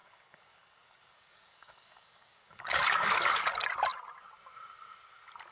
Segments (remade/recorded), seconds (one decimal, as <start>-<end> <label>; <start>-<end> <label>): 0.0-3.3 remade; 3.3-5.5 recorded